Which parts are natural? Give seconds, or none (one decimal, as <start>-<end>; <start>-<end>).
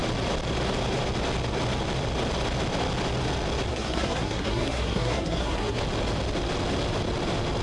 0.0-3.7; 5.8-7.6